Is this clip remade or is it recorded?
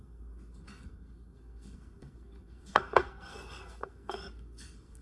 remade